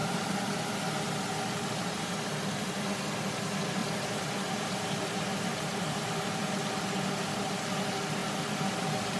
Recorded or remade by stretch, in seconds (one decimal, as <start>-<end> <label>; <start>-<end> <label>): 0.0-0.6 remade; 0.6-3.8 recorded; 3.8-6.3 remade; 6.3-8.2 recorded; 8.2-8.7 remade; 8.7-9.2 recorded